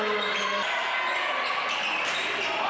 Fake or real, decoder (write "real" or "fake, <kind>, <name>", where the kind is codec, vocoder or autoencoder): real